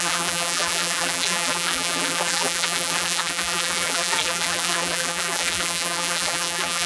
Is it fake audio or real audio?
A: fake